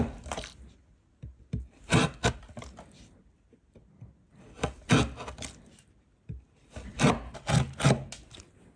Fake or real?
real